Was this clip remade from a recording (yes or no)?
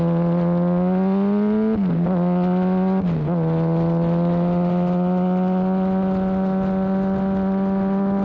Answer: no